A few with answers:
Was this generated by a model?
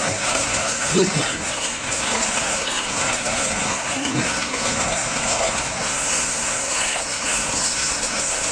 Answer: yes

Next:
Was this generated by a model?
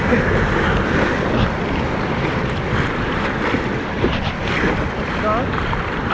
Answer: yes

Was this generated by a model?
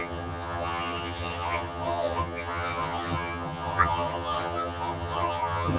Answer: yes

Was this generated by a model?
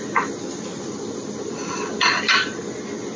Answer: no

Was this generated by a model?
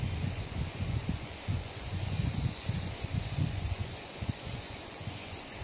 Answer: yes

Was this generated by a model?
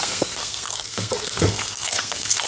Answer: yes